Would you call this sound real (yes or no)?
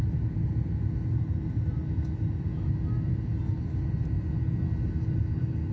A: yes